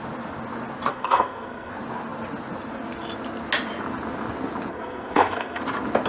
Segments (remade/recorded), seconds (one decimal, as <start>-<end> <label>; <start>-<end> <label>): 0.0-0.9 recorded; 0.9-1.7 remade; 1.7-4.7 recorded; 4.7-5.6 remade; 5.6-6.1 recorded